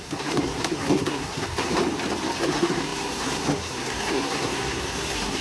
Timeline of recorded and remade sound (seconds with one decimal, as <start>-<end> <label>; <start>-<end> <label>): 0.0-1.8 remade; 1.8-2.4 recorded; 2.4-5.4 remade